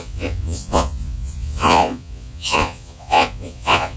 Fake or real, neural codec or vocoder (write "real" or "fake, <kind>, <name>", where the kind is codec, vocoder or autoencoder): fake, vocoder, Vocos